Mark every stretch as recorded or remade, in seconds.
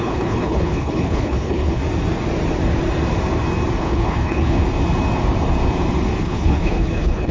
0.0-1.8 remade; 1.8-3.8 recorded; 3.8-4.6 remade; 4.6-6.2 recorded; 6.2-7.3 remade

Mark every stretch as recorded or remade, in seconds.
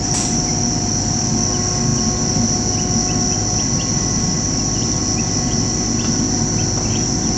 0.0-7.4 recorded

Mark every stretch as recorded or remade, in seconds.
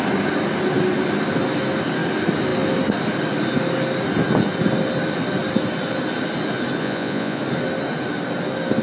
0.0-6.8 recorded; 6.8-7.4 remade; 7.4-8.8 recorded